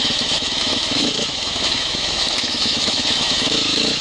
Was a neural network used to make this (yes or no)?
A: yes